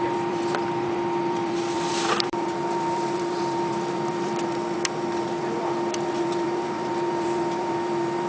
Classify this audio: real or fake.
fake